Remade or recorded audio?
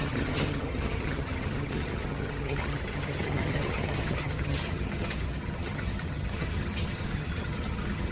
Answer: remade